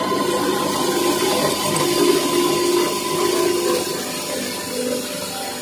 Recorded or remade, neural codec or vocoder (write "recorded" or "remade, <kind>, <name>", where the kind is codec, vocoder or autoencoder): recorded